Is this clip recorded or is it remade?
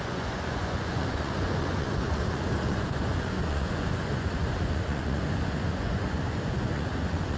remade